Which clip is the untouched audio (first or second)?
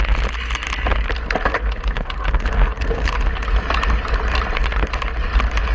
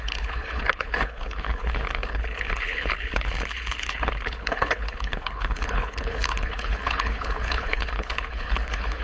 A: first